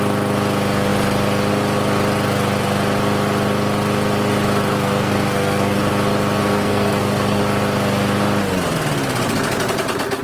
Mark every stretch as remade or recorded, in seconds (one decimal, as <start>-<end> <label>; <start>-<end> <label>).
0.0-4.7 recorded; 4.7-5.9 remade; 5.9-6.4 recorded; 6.4-7.4 remade; 7.4-10.2 recorded